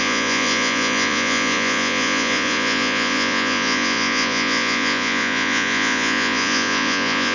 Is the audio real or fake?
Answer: fake